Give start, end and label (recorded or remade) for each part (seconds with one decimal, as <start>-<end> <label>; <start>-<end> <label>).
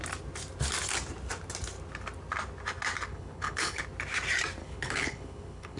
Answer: 0.0-3.1 recorded; 3.1-3.8 remade; 3.8-4.6 recorded; 4.6-5.8 remade